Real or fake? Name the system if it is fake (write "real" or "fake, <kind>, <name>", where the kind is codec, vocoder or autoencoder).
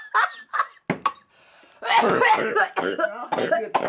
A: real